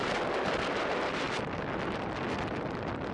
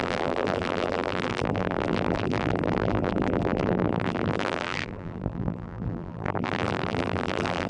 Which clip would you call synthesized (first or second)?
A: second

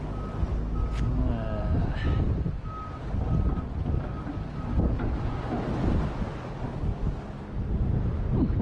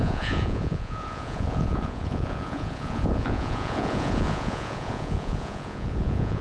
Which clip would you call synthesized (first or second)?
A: second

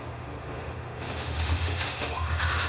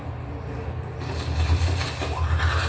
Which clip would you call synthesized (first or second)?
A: first